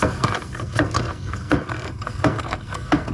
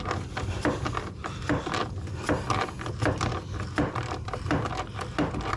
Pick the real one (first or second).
second